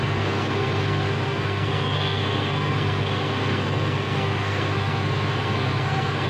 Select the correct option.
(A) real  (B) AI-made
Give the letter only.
B